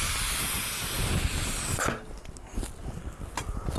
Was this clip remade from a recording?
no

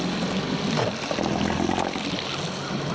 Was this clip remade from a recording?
no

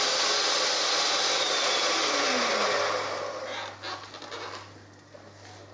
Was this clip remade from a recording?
no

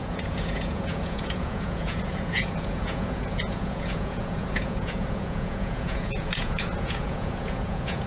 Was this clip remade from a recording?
yes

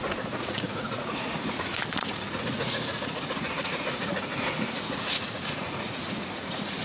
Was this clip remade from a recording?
yes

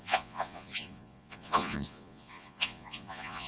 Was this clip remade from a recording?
yes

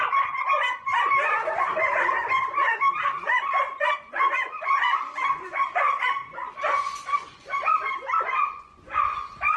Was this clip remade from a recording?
yes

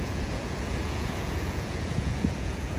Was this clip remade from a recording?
yes